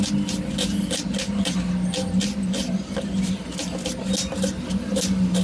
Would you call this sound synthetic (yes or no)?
no